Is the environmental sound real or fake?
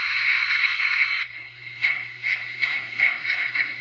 fake